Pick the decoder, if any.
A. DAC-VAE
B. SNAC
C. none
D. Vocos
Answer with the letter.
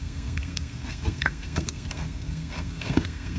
B